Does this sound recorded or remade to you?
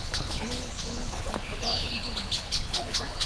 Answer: remade